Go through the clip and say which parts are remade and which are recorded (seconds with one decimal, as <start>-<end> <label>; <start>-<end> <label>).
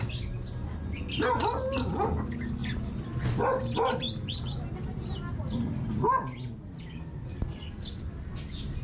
0.0-8.8 recorded